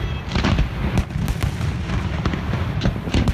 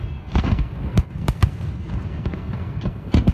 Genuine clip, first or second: first